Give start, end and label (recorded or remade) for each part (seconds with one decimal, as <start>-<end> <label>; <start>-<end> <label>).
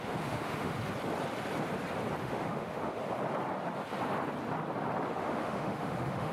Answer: 0.0-0.8 remade; 0.8-2.2 recorded; 2.2-3.0 remade; 3.0-5.1 recorded; 5.1-6.3 remade